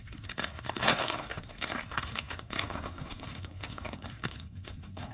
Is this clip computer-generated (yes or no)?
yes